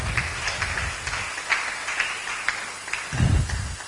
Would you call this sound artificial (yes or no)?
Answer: no